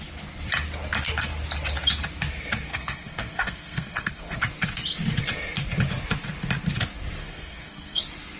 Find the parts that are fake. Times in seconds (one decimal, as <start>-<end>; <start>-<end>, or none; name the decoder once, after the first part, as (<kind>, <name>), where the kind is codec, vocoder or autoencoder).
2.7-4.4 (codec, SNAC); 7.2-8.0